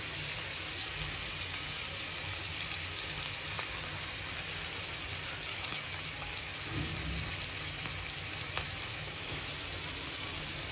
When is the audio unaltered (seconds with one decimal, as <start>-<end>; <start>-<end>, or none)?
0.0-5.5; 6.5-8.9; 9.5-10.7